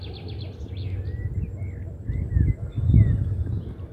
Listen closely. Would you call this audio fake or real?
real